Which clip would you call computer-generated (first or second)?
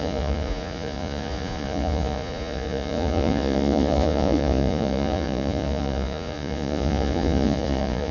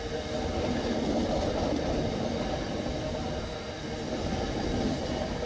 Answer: first